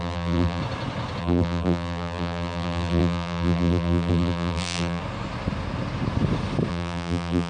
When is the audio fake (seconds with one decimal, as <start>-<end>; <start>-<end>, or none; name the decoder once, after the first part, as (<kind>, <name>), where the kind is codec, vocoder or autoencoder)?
0.0-0.6 (vocoder, BigVGAN v2); 1.2-5.0; 6.7-7.5